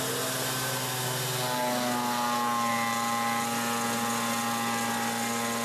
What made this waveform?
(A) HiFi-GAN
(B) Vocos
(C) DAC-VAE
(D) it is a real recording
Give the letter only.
D